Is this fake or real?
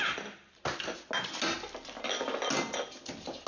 real